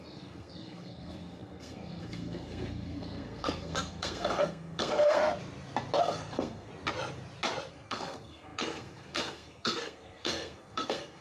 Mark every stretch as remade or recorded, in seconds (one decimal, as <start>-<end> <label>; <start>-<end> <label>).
0.0-5.2 remade; 5.2-6.0 recorded; 6.0-6.7 remade; 6.7-7.7 recorded; 7.7-11.2 remade

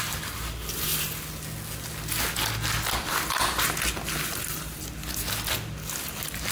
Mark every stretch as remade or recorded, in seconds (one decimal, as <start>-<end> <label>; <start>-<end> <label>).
0.0-6.5 recorded

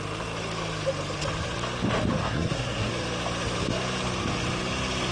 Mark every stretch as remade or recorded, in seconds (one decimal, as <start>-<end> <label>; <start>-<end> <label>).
0.0-2.2 recorded; 2.2-2.9 remade; 2.9-5.1 recorded

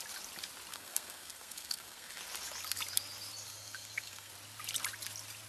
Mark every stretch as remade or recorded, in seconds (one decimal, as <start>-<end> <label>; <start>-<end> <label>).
0.0-0.7 recorded; 0.7-2.2 remade; 2.2-3.5 recorded; 3.5-4.3 remade; 4.3-5.5 recorded

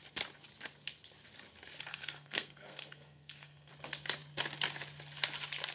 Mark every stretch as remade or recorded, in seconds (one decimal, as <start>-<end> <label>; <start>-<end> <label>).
0.0-1.9 recorded; 1.9-3.7 remade; 3.7-5.7 recorded

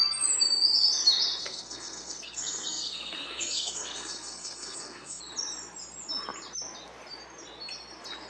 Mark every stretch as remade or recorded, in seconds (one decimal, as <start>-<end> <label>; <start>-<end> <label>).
0.0-1.4 recorded; 1.4-5.2 remade; 5.2-8.3 recorded

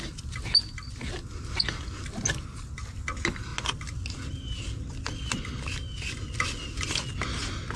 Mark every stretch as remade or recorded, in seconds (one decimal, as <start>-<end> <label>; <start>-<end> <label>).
0.0-7.8 recorded

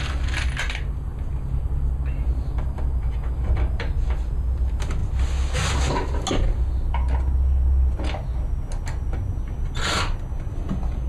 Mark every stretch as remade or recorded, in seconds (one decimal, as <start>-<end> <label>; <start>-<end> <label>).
0.0-11.1 recorded